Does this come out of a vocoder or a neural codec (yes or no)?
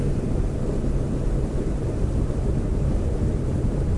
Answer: yes